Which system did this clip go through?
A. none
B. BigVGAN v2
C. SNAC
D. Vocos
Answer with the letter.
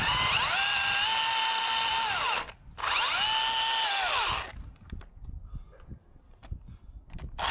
A